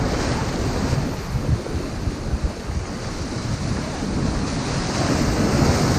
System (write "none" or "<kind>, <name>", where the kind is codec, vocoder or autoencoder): none